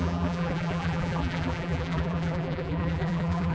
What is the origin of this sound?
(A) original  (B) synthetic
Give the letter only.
B